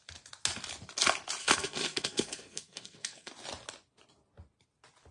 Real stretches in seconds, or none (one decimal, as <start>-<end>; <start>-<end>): 0.0-1.4; 3.3-5.1